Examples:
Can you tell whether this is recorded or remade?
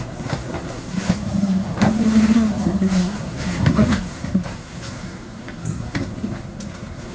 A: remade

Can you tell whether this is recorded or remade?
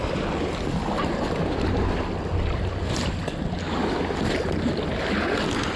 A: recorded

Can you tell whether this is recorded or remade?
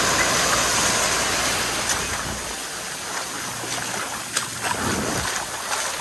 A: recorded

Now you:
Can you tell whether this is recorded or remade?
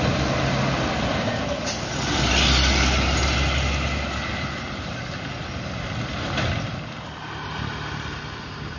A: recorded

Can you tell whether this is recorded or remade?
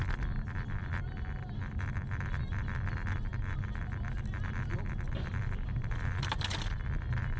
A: recorded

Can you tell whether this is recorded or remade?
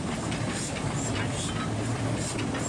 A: recorded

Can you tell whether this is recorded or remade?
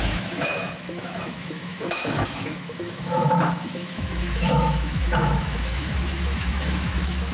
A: remade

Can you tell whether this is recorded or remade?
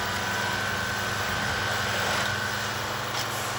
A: recorded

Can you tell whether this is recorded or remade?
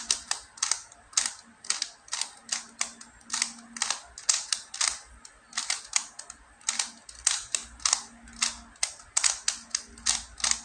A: recorded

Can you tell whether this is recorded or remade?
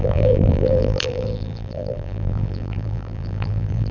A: remade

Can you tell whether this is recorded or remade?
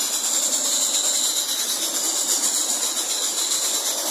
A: recorded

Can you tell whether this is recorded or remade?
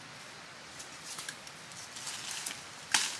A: recorded